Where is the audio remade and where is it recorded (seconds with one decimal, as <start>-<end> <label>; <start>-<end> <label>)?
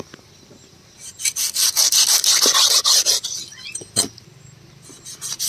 0.0-5.5 recorded